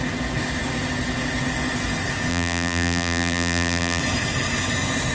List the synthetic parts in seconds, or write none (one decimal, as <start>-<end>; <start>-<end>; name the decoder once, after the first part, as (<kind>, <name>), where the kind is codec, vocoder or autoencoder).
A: 2.3-4.0 (vocoder, BigVGAN v2)